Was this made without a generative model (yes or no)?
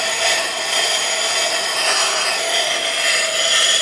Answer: yes